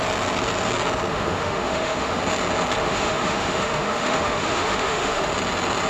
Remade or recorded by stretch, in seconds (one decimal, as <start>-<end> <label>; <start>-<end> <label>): 0.0-1.1 recorded; 1.1-2.2 remade; 2.2-2.8 recorded; 2.8-5.3 remade; 5.3-5.9 recorded